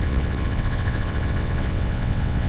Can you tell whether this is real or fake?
fake